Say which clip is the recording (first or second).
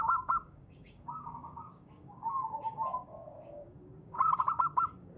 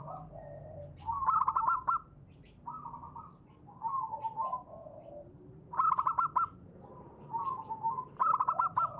second